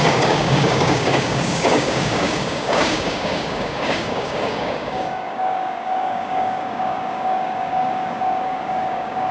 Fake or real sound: fake